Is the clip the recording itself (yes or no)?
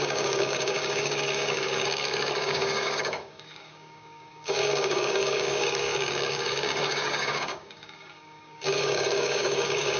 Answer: no